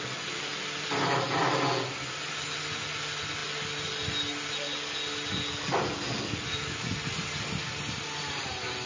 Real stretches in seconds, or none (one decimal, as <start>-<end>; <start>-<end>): 0.0-8.9